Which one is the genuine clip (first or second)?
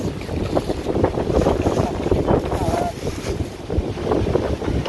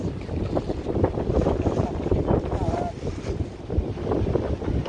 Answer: second